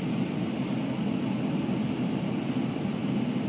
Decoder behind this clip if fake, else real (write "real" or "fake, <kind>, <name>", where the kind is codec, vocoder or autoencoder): real